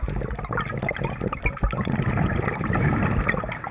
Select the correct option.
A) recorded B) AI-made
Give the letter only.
A